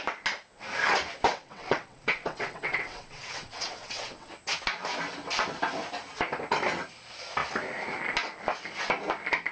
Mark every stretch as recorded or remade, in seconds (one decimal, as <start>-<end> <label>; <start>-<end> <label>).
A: 0.0-1.3 recorded; 1.3-4.3 remade; 4.3-9.5 recorded